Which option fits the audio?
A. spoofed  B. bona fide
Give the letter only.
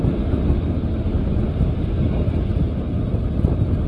B